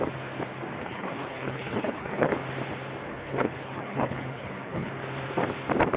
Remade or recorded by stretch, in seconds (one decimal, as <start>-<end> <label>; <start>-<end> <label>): 0.0-0.8 recorded; 0.8-2.3 remade; 2.3-3.1 recorded; 3.1-4.9 remade; 4.9-6.0 recorded